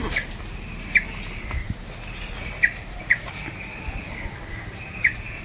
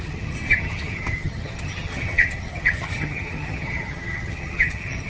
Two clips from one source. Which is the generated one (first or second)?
second